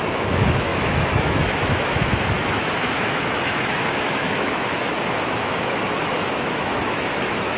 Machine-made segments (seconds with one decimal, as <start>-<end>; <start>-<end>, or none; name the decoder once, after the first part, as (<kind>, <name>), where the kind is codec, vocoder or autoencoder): 0.0-7.6 (autoencoder, DAC-VAE)